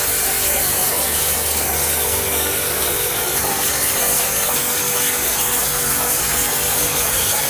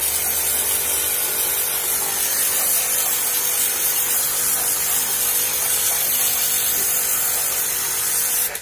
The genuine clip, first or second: second